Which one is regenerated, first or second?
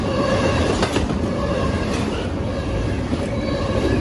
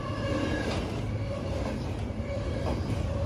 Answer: first